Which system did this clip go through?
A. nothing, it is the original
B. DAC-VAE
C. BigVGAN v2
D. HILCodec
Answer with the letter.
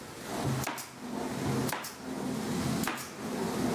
A